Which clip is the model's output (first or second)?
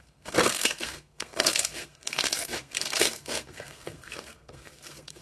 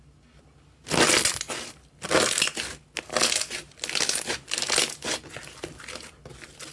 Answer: first